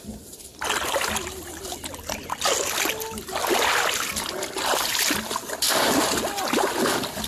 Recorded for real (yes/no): yes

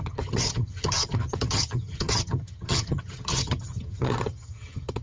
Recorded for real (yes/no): no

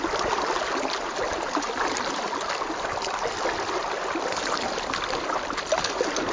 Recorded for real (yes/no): yes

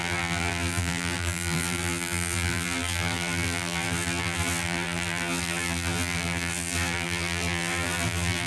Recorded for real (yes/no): no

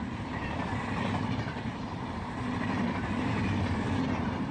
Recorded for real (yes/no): no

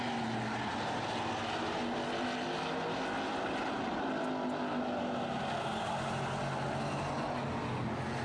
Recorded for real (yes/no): yes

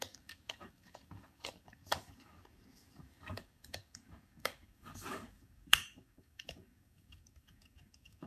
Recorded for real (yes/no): no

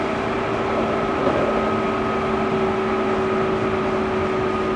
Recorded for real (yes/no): yes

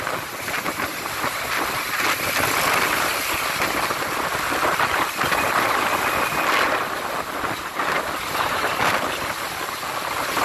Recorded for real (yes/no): yes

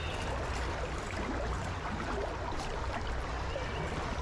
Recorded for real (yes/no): yes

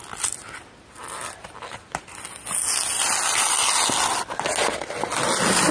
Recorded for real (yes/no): yes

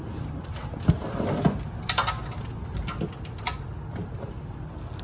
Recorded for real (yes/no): yes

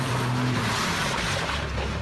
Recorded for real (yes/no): yes